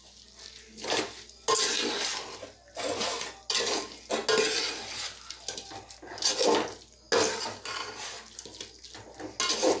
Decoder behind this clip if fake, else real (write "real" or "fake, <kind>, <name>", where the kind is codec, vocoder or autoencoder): real